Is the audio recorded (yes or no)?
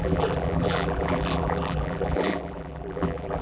no